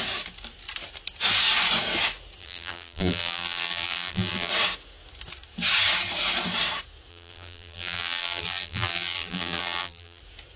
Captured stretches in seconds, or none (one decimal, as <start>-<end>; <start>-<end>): 0.0-2.4; 4.5-7.1; 10.2-10.6